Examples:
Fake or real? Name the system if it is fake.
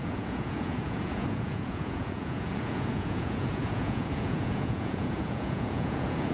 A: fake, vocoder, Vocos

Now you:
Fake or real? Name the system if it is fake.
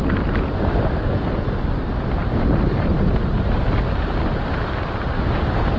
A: real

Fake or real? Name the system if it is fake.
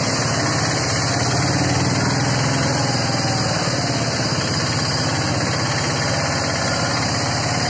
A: real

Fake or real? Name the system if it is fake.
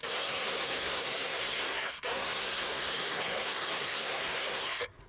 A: fake, codec, SNAC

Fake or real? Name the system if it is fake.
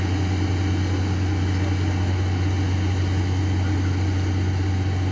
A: real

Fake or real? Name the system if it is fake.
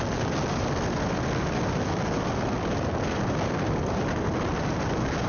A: real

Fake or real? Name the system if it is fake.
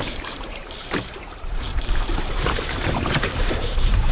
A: fake, vocoder, BigVGAN v2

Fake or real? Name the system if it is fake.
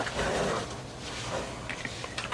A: real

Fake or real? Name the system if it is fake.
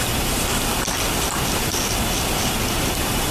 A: real